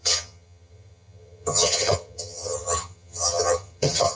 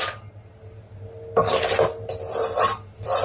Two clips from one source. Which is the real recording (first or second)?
second